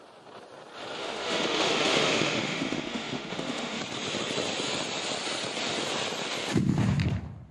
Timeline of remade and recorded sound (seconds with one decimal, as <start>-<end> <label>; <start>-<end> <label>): 0.0-1.0 recorded; 1.0-3.8 remade; 3.8-7.5 recorded

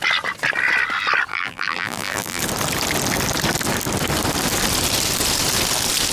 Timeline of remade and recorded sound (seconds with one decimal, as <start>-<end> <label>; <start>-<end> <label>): 0.0-1.3 recorded; 1.3-2.4 remade; 2.4-6.1 recorded

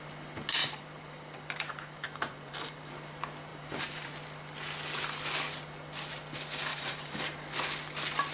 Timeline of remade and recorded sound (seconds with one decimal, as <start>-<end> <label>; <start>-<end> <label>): 0.0-0.6 recorded; 0.6-2.9 remade; 2.9-3.5 recorded; 3.5-4.1 remade; 4.1-6.7 recorded; 6.7-7.2 remade; 7.2-8.3 recorded